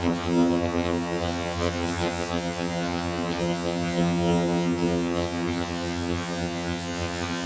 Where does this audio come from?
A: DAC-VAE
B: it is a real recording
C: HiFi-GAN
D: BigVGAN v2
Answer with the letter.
C